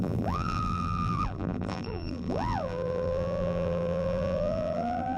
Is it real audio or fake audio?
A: fake